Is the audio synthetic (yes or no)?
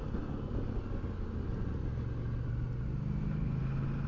no